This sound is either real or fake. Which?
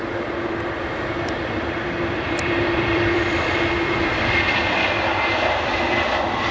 fake